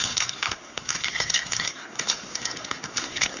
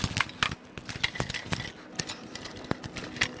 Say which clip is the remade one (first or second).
first